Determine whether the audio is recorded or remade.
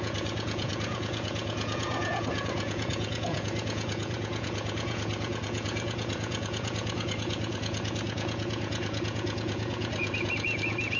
remade